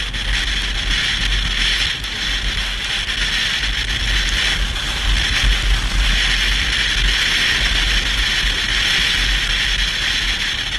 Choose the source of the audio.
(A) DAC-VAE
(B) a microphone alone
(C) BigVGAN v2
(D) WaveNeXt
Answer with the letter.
B